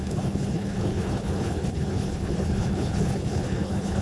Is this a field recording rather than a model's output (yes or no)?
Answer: no